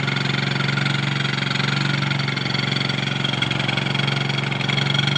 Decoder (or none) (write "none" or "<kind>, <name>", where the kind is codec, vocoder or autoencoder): none